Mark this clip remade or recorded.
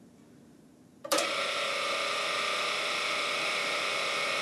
remade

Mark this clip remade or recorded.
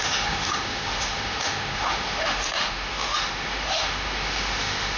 remade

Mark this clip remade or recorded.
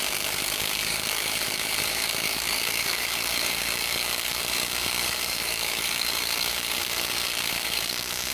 remade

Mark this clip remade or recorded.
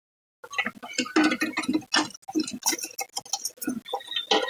recorded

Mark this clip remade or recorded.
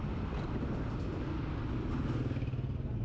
recorded